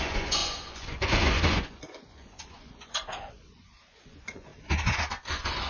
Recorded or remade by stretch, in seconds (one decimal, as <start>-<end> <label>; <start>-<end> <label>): 0.0-4.5 remade; 4.5-5.1 recorded; 5.1-5.7 remade